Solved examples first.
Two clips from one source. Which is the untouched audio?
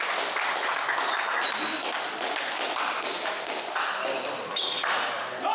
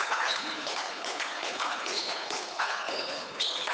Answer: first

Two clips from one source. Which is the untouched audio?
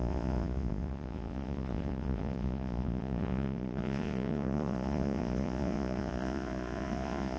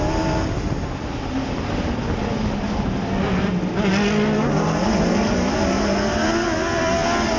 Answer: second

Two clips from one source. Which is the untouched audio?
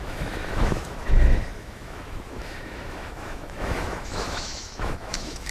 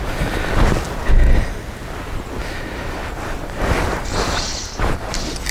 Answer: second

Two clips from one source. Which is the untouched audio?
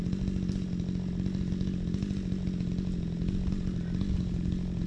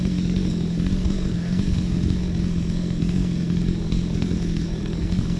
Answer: first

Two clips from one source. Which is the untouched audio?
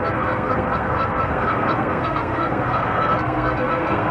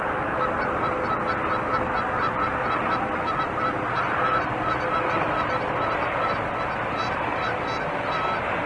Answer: second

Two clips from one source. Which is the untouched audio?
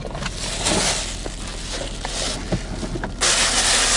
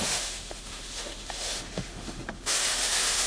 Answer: first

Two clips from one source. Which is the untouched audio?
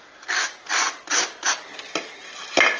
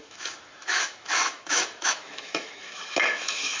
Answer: first